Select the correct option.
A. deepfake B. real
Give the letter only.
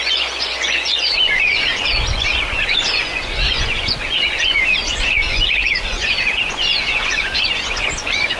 A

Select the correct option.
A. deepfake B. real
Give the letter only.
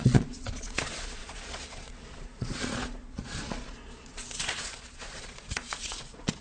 A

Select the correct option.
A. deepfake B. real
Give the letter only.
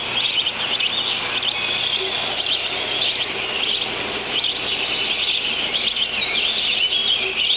B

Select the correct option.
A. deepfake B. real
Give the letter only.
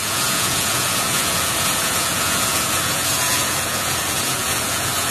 A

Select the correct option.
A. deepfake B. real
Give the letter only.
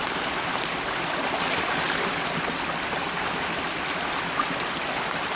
B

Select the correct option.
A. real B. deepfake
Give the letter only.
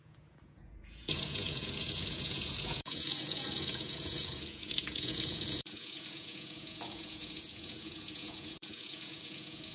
B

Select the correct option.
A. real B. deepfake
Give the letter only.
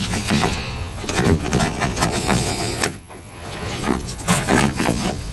B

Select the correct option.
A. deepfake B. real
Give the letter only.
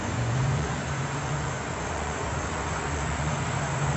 A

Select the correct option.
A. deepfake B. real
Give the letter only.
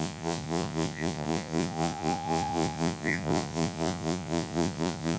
A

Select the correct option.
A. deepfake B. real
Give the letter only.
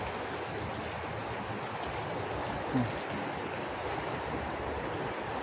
B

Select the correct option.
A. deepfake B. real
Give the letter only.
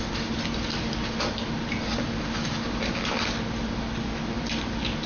B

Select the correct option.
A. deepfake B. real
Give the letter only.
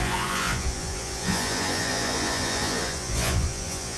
A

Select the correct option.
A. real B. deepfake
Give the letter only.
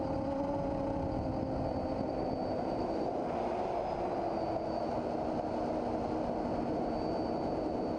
A